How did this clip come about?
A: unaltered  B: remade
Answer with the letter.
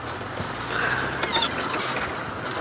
A